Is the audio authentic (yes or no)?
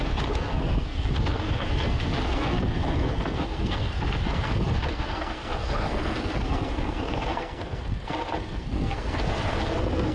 no